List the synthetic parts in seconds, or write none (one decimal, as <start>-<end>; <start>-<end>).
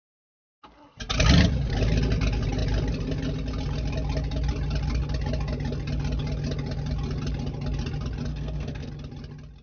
8.3-8.9